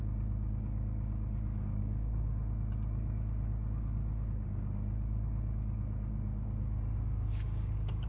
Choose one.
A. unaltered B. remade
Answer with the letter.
B